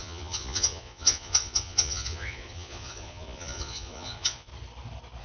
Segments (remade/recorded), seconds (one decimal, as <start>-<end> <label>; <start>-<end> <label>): 0.0-4.5 remade; 4.5-5.2 recorded